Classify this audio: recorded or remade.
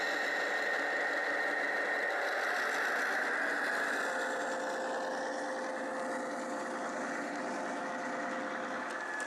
recorded